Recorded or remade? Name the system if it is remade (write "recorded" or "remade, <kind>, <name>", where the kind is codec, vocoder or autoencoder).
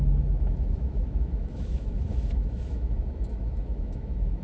remade, autoencoder, DAC-VAE